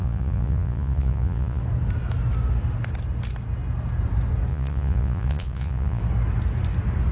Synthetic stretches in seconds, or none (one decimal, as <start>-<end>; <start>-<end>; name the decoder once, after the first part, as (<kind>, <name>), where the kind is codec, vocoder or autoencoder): 0.0-1.6 (vocoder, Vocos); 4.5-6.0